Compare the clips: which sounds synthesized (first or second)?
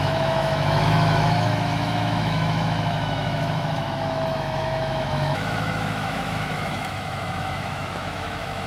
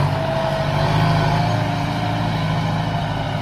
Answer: first